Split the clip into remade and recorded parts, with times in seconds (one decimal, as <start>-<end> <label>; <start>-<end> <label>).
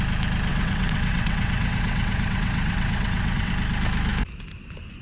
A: 0.0-0.5 recorded; 0.5-3.5 remade; 3.5-5.0 recorded